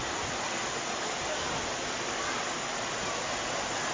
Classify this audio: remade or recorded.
recorded